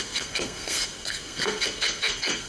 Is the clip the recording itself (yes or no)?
no